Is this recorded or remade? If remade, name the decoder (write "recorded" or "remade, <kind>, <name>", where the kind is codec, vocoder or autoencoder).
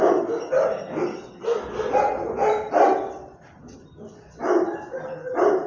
recorded